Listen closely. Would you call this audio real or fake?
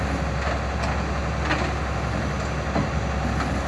real